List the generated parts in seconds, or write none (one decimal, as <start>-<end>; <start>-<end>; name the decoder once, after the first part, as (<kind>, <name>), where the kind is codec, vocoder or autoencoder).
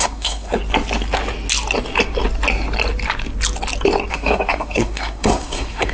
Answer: 0.0-0.6 (codec, SNAC); 4.1-5.9